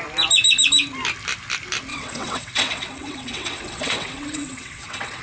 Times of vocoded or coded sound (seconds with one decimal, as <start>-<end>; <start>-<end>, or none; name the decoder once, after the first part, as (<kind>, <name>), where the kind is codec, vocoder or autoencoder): 1.9-5.2 (vocoder, WaveNeXt)